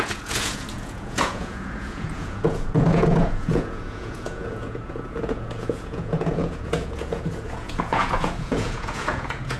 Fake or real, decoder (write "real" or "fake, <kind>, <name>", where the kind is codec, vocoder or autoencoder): fake, vocoder, Vocos